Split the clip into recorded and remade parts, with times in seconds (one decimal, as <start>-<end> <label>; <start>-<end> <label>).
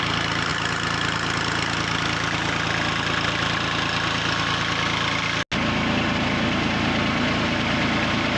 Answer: 0.0-8.4 recorded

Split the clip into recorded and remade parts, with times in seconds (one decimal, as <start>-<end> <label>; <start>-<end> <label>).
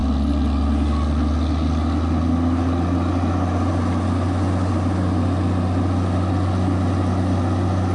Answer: 0.0-7.9 recorded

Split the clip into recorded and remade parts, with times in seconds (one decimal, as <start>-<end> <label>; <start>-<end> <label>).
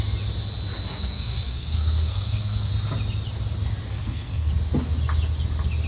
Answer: 0.0-0.9 recorded; 0.9-2.7 remade; 2.7-3.9 recorded; 3.9-4.5 remade; 4.5-5.9 recorded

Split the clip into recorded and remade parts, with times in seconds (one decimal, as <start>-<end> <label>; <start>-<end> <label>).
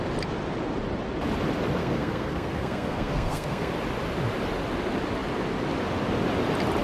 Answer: 0.0-1.8 recorded; 1.8-3.7 remade; 3.7-6.8 recorded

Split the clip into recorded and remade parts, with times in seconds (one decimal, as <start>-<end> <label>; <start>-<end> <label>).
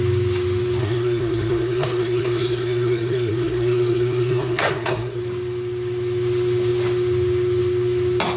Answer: 0.0-0.8 recorded; 0.8-5.2 remade; 5.2-8.4 recorded